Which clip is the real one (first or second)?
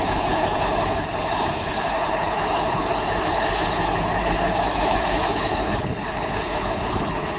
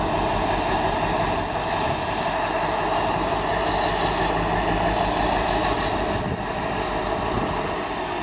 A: second